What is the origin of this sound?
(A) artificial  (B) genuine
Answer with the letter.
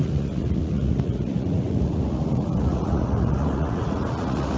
A